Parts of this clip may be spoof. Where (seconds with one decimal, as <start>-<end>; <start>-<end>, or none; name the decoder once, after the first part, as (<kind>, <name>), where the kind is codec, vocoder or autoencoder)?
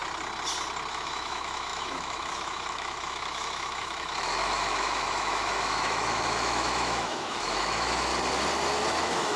0.9-8.1 (autoencoder, DAC-VAE); 8.9-9.4